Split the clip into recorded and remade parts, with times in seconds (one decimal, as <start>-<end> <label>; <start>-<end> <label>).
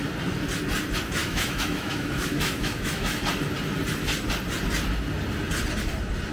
0.0-1.2 recorded; 1.2-3.2 remade; 3.2-6.3 recorded